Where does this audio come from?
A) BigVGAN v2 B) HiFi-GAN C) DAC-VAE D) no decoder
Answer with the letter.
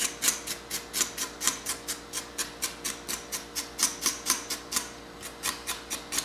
D